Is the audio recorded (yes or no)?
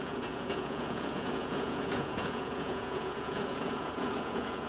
no